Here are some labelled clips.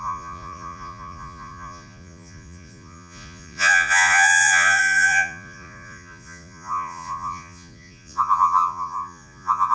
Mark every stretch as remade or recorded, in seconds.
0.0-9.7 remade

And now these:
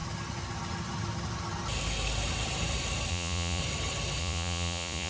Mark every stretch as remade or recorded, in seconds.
0.0-3.1 recorded; 3.1-3.6 remade; 3.6-4.2 recorded; 4.2-5.1 remade

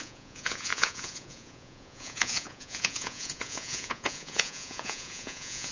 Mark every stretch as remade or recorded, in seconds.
0.0-5.7 remade

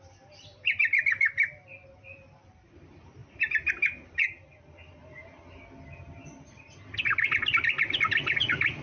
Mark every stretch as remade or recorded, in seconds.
0.0-8.8 recorded